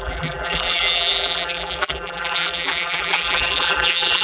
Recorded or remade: remade